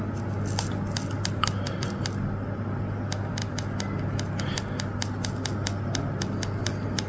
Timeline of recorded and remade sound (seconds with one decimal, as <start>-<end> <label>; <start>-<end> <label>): 0.0-7.1 recorded

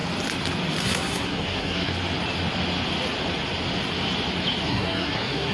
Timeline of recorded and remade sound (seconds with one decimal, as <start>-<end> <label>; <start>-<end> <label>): 0.0-0.8 recorded; 0.8-1.9 remade; 1.9-4.7 recorded; 4.7-5.5 remade

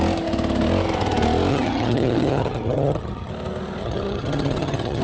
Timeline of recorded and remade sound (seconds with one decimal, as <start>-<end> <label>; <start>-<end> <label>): 0.0-1.5 recorded; 1.5-3.3 remade; 3.3-3.8 recorded; 3.8-5.0 remade

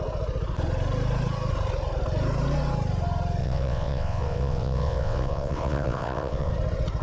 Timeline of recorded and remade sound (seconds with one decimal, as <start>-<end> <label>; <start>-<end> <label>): 0.0-3.4 recorded; 3.4-6.5 remade; 6.5-7.0 recorded

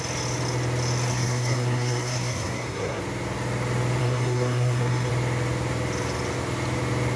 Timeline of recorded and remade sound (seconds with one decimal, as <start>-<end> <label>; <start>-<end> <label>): 0.0-1.1 recorded; 1.1-3.0 remade; 3.0-4.0 recorded; 4.0-5.1 remade; 5.1-7.2 recorded

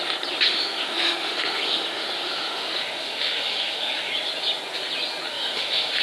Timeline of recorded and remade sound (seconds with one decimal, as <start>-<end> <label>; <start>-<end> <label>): 0.0-0.5 recorded; 0.5-4.1 remade; 4.1-5.3 recorded; 5.3-6.0 remade

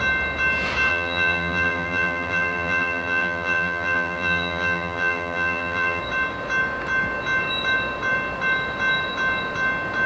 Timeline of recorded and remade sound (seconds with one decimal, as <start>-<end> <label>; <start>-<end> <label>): 0.0-0.9 recorded; 0.9-6.0 remade; 6.0-10.1 recorded